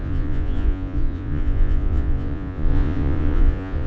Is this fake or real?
fake